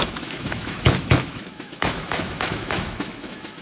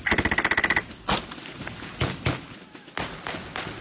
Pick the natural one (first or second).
second